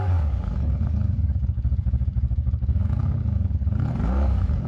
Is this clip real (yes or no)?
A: no